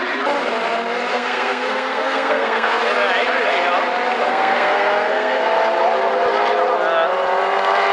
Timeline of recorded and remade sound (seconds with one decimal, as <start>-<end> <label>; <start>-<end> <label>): 0.0-1.1 recorded; 1.1-2.9 remade; 2.9-4.2 recorded; 4.2-5.4 remade; 5.4-7.9 recorded

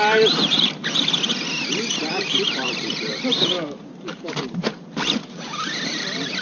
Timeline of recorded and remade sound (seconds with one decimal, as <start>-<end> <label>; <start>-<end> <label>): 0.0-0.8 remade; 0.8-2.1 recorded; 2.1-6.4 remade

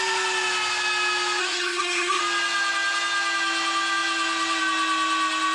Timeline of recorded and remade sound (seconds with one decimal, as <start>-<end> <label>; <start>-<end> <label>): 0.0-1.4 recorded; 1.4-2.2 remade; 2.2-5.5 recorded

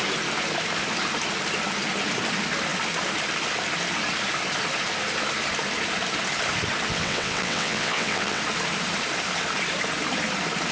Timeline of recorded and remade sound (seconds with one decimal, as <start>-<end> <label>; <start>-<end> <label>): 0.0-6.9 recorded; 6.9-8.4 remade; 8.4-10.7 recorded